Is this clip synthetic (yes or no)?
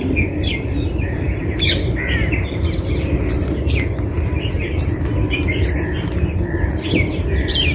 yes